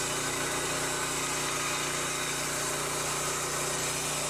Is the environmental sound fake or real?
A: real